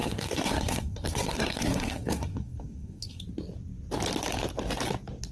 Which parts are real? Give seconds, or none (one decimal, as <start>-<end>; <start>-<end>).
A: 3.2-5.3